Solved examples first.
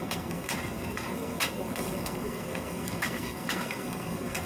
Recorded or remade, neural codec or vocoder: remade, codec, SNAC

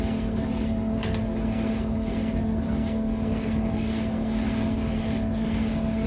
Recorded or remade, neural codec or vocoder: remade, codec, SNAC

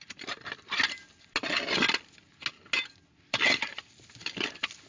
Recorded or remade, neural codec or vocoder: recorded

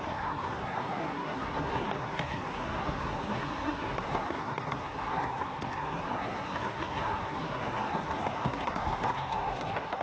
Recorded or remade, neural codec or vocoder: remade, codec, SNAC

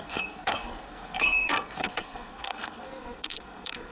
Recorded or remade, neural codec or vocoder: remade, codec, SNAC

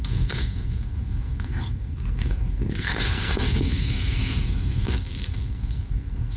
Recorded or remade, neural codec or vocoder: remade, codec, SNAC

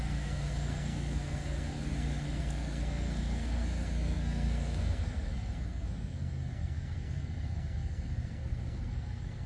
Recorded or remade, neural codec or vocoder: remade, codec, SNAC